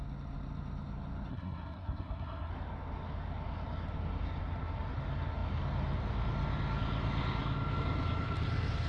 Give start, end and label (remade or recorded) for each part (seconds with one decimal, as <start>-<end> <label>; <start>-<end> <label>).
0.0-1.3 recorded; 1.3-2.5 remade; 2.5-8.9 recorded